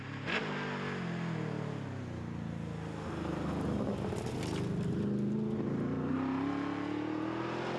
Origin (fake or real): real